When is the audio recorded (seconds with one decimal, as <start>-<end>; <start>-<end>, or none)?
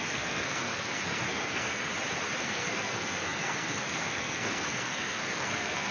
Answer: 1.9-2.4